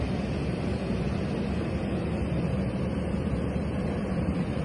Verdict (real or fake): real